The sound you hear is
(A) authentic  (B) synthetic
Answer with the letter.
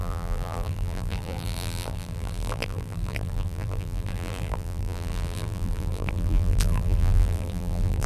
B